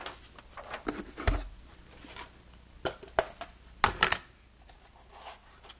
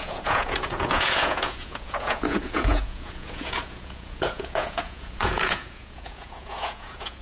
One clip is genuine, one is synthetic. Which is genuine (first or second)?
first